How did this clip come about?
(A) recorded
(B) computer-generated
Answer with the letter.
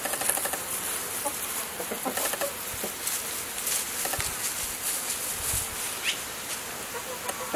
A